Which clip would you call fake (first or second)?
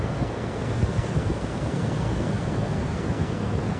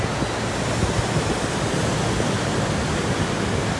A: first